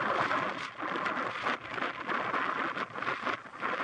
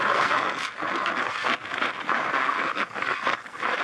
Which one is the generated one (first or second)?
second